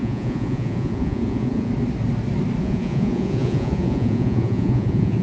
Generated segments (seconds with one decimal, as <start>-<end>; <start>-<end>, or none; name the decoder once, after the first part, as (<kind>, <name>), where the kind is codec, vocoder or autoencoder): 0.0-1.7 (vocoder, Vocos); 2.6-5.2